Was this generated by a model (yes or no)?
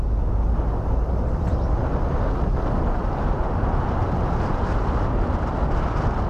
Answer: no